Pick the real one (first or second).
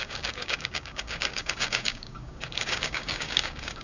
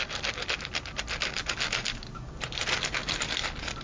second